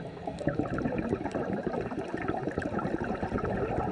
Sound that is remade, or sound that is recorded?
remade